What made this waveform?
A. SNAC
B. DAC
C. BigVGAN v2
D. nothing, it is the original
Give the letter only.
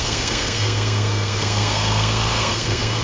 A